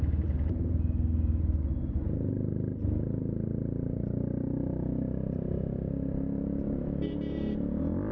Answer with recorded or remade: recorded